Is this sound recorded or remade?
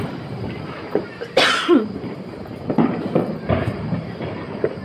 remade